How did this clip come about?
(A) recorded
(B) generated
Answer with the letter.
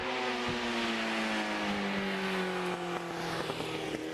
A